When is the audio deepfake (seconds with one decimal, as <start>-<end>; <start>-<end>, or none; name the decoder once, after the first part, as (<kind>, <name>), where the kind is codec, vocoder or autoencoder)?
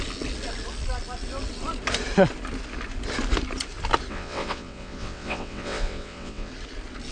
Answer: 4.1-6.5 (vocoder, WaveNeXt)